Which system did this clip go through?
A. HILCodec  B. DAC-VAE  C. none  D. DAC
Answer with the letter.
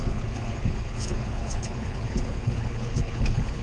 A